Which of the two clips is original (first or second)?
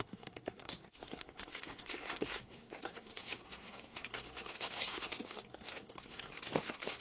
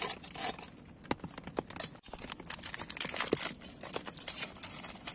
second